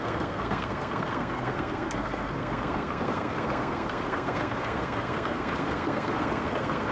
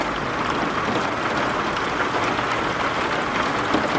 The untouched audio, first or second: second